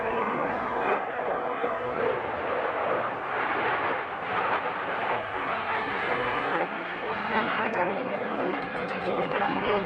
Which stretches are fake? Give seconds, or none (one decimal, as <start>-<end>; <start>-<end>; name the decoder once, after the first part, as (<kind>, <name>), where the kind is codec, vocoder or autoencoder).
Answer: 0.0-2.0 (codec, SNAC); 5.1-9.9